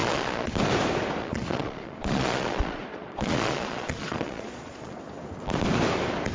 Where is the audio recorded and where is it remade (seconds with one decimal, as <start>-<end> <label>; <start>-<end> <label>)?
0.0-0.5 remade; 0.5-1.2 recorded; 1.2-5.0 remade; 5.0-6.3 recorded